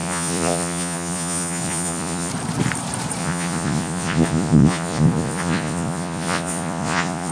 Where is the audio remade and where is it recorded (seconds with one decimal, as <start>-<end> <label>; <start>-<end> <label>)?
0.0-2.3 remade; 2.3-3.2 recorded; 3.2-7.3 remade